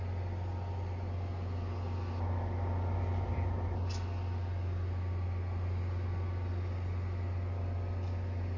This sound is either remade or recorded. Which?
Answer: recorded